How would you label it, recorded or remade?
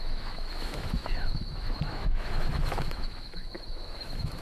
remade